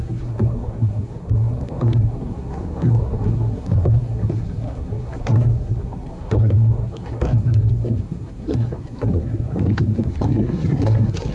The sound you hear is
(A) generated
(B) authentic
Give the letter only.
A